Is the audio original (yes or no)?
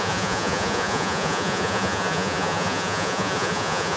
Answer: no